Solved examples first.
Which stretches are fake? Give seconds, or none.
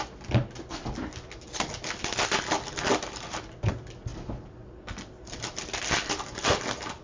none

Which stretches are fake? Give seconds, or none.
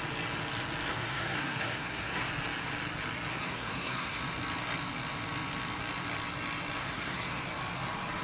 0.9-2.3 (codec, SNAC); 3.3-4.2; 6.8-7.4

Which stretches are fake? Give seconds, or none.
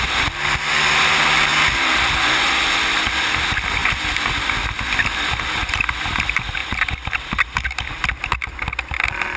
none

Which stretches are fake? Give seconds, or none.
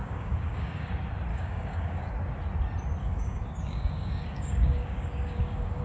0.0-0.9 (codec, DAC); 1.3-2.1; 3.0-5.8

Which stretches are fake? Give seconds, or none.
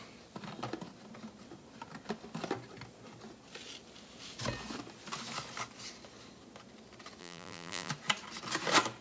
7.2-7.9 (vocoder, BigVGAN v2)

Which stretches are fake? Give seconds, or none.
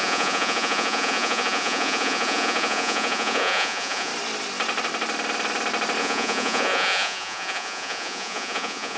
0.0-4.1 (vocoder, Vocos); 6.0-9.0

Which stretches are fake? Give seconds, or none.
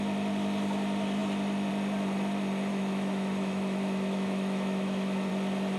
2.7-5.3 (autoencoder, DAC-VAE)